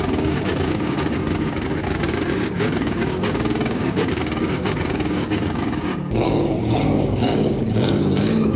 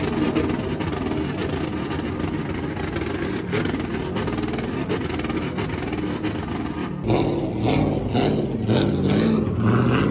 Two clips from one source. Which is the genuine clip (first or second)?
second